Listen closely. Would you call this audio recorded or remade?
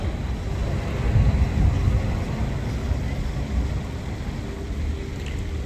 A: recorded